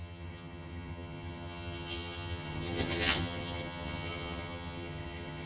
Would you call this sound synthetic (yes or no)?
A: yes